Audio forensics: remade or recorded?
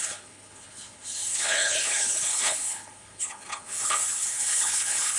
remade